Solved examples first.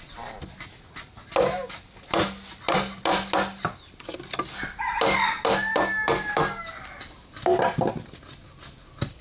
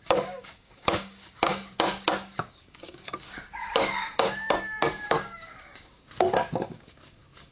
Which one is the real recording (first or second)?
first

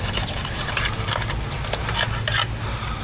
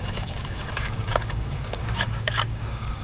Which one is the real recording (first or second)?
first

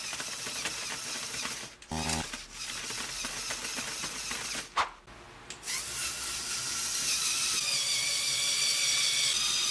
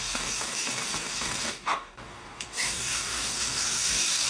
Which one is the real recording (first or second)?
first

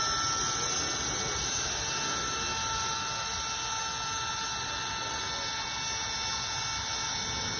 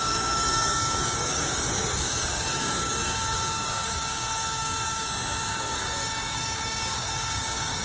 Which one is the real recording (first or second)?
first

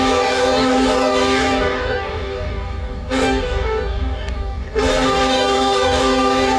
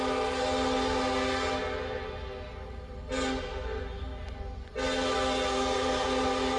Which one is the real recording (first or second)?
second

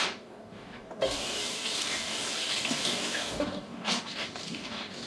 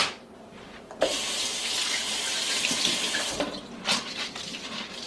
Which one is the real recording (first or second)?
second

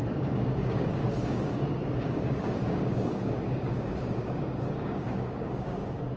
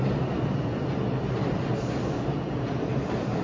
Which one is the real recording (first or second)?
second